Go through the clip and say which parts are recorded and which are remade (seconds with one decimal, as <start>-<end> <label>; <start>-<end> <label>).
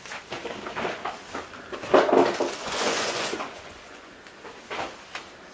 0.0-2.6 recorded; 2.6-4.1 remade; 4.1-5.5 recorded